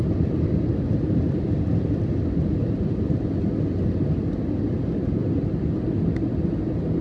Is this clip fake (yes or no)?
no